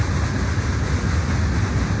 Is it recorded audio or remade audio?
recorded